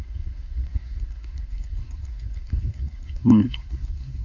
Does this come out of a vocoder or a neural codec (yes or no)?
yes